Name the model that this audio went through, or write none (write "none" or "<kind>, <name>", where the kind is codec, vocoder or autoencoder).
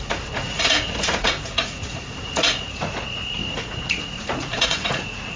vocoder, Vocos